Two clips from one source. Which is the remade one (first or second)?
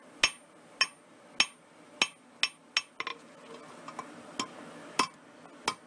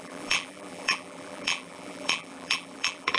second